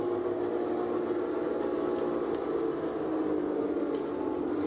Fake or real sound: real